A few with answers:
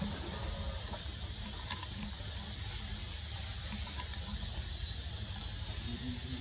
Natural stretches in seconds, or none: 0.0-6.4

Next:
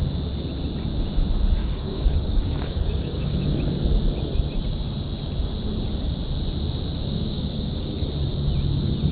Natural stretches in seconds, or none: 0.0-1.6; 3.6-7.3; 8.1-9.1

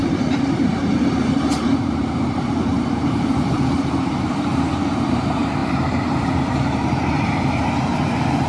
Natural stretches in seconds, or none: none